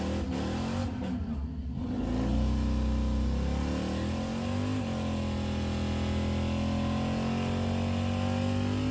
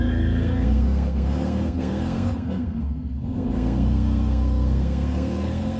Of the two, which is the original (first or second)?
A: first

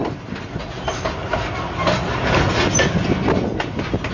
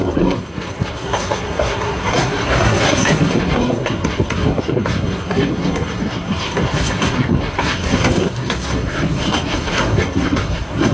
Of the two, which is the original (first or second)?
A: first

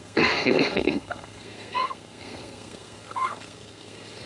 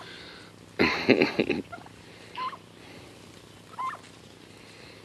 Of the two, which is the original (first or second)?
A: second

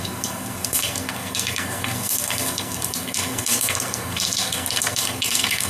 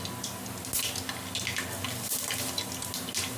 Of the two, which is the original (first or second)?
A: second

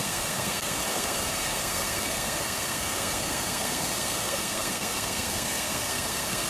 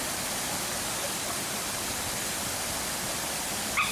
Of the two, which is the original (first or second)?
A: second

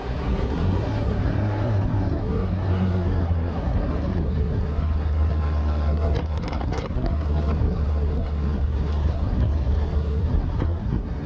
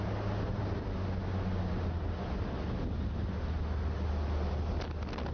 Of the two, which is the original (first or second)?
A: second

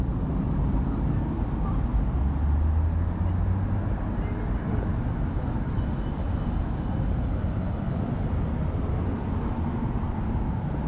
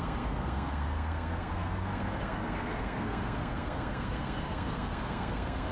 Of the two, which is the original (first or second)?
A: first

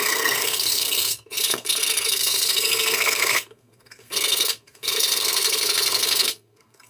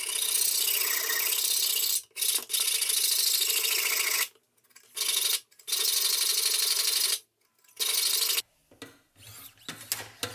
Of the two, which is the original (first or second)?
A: second